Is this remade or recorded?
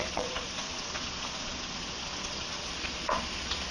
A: remade